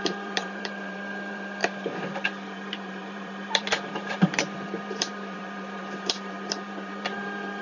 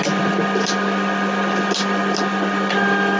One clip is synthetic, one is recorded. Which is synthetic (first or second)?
first